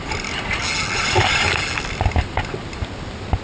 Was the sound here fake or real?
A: real